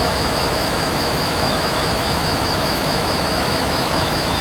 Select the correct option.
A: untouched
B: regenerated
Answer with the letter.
B